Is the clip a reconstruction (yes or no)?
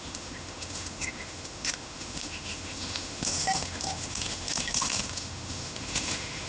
yes